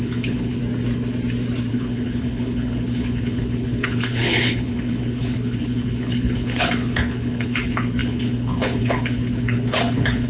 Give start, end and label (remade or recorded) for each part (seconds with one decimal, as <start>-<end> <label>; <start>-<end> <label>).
0.0-0.6 remade; 0.6-1.7 recorded; 1.7-10.3 remade